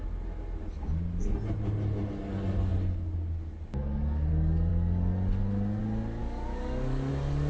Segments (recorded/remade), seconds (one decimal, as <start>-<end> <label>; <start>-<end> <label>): 0.0-6.2 recorded; 6.2-7.1 remade; 7.1-7.5 recorded

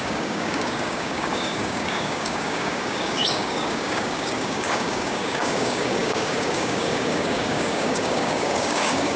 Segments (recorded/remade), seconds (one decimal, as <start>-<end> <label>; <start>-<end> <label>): 0.0-9.2 remade